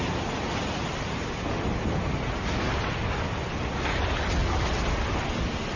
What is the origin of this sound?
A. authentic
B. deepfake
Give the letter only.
A